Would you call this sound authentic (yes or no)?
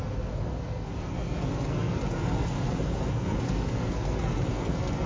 no